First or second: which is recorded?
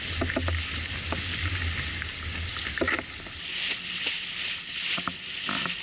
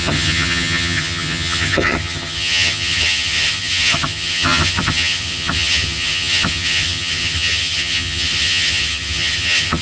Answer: first